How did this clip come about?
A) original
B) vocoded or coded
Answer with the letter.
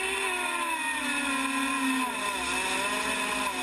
A